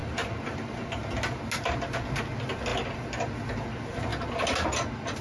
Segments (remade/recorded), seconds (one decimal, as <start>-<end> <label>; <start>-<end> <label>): 0.0-1.1 remade; 1.1-5.2 recorded